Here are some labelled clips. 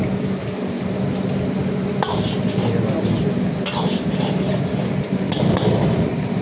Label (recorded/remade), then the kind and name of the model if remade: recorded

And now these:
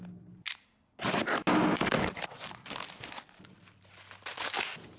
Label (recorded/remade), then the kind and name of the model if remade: recorded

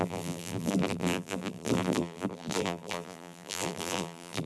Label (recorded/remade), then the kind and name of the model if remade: remade, vocoder, BigVGAN v2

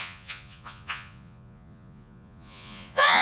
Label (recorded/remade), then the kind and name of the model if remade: remade, vocoder, Vocos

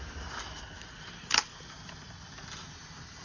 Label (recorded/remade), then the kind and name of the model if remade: recorded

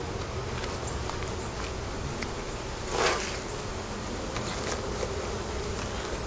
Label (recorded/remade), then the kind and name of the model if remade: recorded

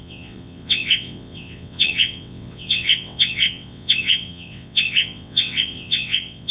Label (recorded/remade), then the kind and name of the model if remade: remade, vocoder, WaveNeXt